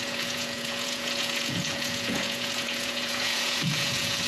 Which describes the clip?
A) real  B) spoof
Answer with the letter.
B